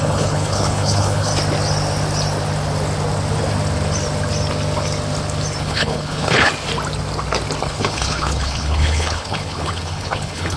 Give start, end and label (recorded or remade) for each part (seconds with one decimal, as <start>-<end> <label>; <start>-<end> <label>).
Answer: 0.0-1.3 remade; 1.3-5.6 recorded; 5.6-6.5 remade; 6.5-7.6 recorded; 7.6-10.6 remade